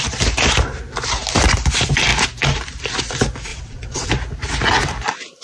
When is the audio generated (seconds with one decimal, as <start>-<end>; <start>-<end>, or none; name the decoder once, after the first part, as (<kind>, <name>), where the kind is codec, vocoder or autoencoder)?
3.5-4.1 (vocoder, WaveNeXt)